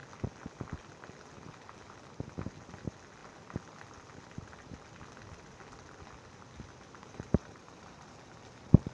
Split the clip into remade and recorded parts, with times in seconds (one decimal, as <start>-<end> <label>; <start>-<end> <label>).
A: 0.0-7.0 recorded; 7.0-8.1 remade; 8.1-8.9 recorded